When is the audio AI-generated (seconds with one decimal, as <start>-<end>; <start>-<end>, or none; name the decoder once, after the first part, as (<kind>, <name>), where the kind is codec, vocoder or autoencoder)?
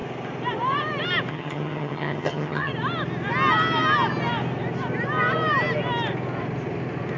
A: 1.3-2.7 (vocoder, HiFi-GAN)